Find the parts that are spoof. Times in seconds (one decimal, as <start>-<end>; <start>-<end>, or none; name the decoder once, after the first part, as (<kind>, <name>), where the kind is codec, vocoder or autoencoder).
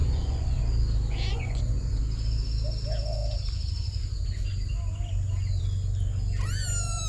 0.0-0.6 (vocoder, Vocos); 1.3-2.0